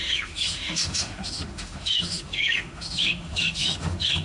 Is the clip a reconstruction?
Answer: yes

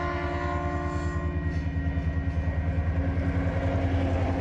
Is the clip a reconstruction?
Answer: no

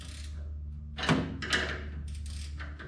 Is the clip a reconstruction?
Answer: no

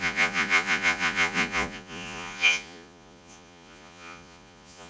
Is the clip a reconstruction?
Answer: yes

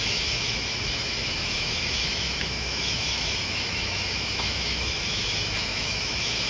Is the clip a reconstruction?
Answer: yes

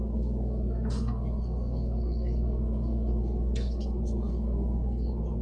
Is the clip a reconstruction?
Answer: yes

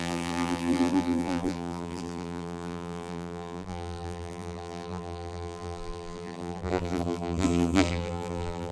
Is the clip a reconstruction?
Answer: yes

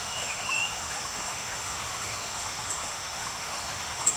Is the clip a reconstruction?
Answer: yes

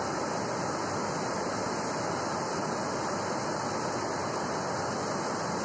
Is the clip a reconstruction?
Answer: no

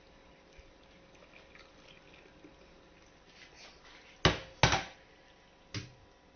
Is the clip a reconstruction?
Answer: no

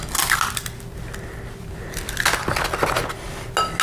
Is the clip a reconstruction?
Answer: no